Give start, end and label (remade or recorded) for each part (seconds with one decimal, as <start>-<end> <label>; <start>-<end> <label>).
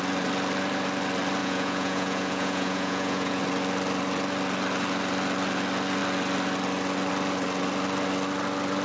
0.0-1.4 recorded; 1.4-3.4 remade; 3.4-8.8 recorded